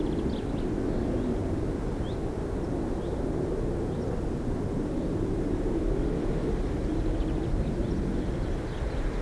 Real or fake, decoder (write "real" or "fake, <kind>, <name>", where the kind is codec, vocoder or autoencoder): real